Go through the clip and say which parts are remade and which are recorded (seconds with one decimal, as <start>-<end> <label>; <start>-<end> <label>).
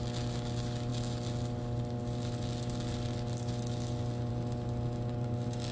0.0-5.7 recorded